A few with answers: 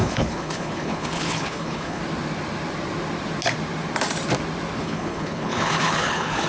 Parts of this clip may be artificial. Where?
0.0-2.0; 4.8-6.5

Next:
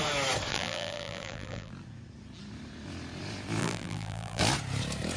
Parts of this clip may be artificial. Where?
0.5-1.7; 3.6-4.4

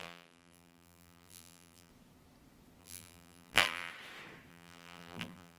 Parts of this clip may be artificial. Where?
0.0-1.9; 2.8-3.9; 4.5-5.6

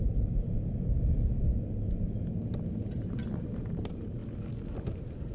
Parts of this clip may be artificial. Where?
0.0-4.2; 4.8-5.3

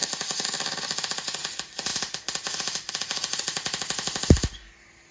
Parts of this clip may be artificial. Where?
none